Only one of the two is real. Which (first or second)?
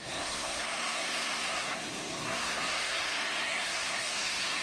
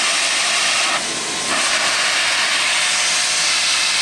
second